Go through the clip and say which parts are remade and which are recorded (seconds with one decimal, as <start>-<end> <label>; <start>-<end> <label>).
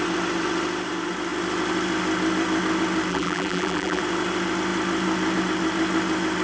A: 0.0-3.1 recorded; 3.1-4.0 remade; 4.0-6.4 recorded